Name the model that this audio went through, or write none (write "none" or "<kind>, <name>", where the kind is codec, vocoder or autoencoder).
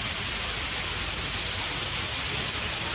none